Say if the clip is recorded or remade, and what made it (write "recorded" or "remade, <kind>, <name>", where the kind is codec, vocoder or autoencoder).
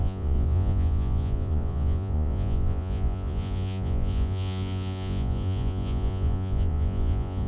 remade, vocoder, Vocos